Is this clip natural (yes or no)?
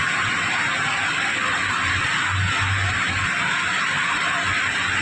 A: yes